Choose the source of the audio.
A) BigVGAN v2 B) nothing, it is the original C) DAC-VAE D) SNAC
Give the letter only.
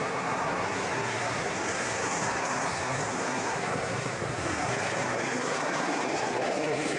D